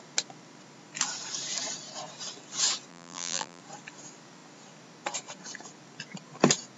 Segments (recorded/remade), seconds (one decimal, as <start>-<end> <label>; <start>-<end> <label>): 0.0-2.9 recorded; 2.9-3.6 remade; 3.6-6.8 recorded